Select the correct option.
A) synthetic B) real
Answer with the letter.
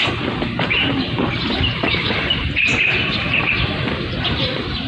A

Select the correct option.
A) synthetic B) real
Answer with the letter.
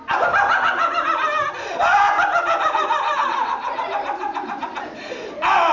B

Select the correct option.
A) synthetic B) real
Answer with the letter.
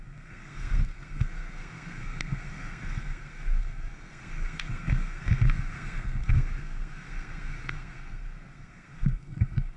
A